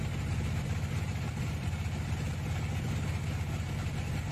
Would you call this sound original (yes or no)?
yes